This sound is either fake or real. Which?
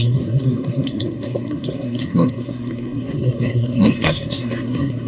fake